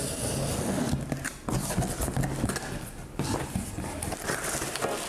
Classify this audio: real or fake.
real